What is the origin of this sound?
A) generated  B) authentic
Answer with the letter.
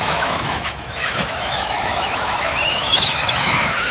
A